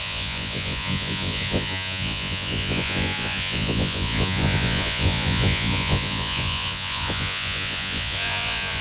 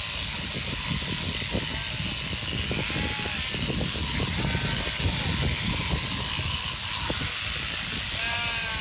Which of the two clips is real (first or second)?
second